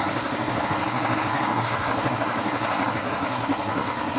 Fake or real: fake